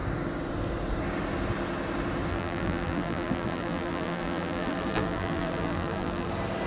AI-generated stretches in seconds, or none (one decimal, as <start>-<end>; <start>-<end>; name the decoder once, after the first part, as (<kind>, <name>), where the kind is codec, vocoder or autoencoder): 2.3-6.3 (vocoder, BigVGAN v2)